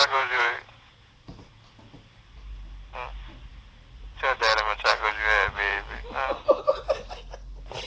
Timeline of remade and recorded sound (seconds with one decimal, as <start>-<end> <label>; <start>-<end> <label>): 0.0-1.1 remade; 1.1-7.9 recorded